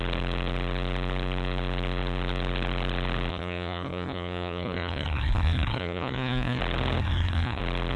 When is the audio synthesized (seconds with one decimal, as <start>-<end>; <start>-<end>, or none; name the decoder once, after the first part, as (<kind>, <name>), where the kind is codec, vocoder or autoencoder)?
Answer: 3.3-6.6 (codec, SNAC); 7.0-7.6